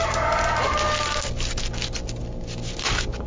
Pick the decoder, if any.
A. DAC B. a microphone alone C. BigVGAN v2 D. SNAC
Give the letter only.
B